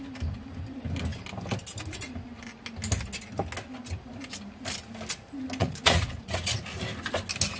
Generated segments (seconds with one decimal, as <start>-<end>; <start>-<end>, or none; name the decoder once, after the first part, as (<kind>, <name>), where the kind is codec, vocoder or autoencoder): 5.6-6.8 (vocoder, Vocos)